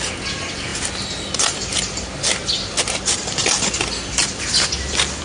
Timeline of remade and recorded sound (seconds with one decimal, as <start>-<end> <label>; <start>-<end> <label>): 0.0-5.2 recorded